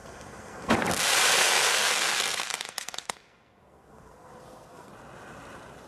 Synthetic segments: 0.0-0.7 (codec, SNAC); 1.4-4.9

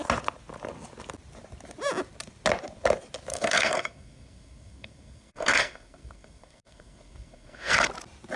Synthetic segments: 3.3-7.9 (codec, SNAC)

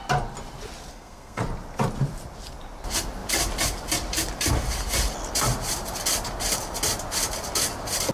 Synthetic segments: 0.9-1.4 (codec, SNAC)

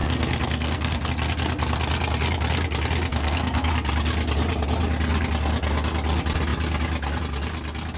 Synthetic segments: 0.0-1.1 (codec, SNAC); 3.1-3.7

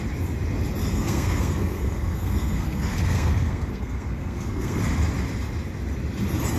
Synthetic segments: 0.8-4.8 (codec, SNAC)